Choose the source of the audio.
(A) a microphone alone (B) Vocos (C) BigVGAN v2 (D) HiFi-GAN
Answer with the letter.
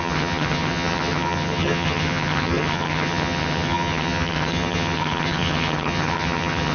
D